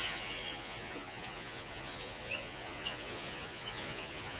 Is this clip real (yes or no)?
no